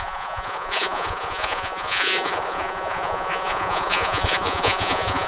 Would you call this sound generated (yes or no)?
yes